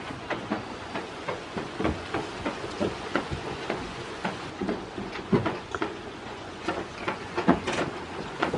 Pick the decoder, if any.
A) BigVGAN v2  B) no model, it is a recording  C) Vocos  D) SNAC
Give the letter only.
C